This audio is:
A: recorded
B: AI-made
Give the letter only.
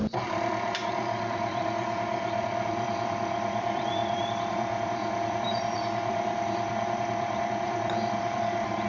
B